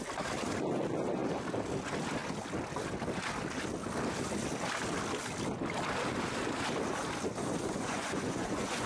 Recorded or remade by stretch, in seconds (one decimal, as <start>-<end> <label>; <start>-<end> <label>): 0.0-7.6 recorded; 7.6-8.9 remade